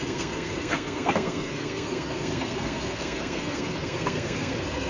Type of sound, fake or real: fake